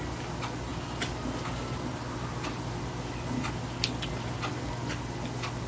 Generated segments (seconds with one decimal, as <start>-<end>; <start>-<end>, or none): none